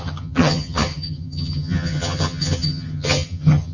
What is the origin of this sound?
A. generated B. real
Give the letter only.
A